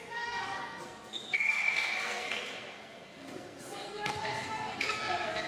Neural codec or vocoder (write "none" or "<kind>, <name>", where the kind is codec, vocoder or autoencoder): codec, SNAC